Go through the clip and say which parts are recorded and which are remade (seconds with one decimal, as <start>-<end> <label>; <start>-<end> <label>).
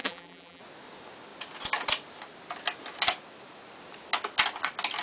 0.0-0.6 remade; 0.6-5.0 recorded